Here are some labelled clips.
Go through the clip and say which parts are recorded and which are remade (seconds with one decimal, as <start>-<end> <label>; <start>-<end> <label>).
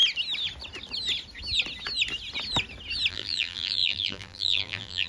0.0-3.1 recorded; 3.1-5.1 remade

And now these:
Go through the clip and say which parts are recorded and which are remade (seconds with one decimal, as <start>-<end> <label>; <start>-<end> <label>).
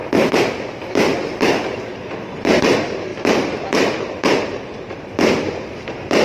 0.0-3.1 recorded; 3.1-4.6 remade; 4.6-6.2 recorded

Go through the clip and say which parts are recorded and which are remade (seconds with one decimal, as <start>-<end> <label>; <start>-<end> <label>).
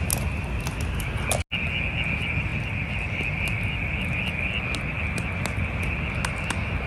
0.0-6.9 recorded